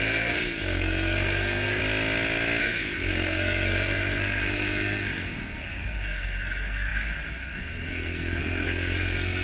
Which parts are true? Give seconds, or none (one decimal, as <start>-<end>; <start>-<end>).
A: 1.8-2.6